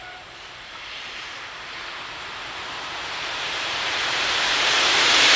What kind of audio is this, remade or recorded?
remade